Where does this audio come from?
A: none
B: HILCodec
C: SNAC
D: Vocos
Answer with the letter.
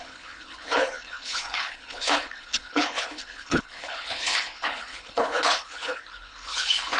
B